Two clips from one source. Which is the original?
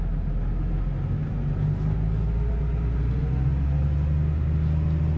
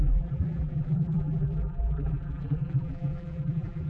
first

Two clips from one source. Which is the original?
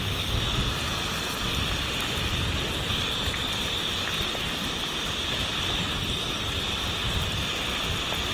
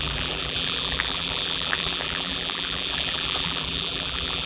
first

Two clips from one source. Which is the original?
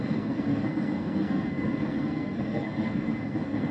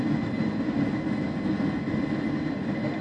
second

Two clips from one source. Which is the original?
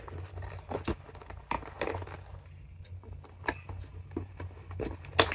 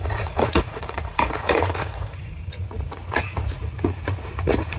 first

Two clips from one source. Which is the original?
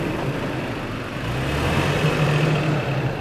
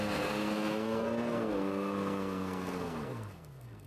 first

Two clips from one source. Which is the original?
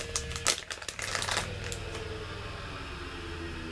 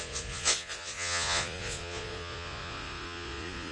first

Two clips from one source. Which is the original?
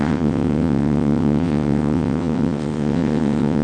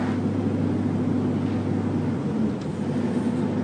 second